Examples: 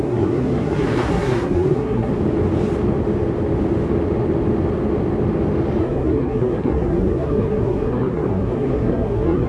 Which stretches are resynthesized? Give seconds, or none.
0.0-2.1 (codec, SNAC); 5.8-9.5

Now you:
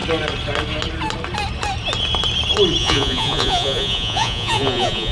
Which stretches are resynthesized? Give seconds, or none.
2.8-5.1 (vocoder, Vocos)

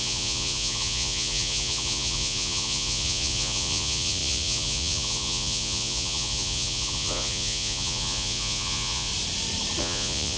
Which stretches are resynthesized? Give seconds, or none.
0.0-9.1 (vocoder, Vocos); 9.8-10.4